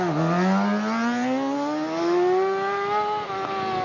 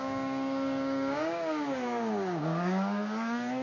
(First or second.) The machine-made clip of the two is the second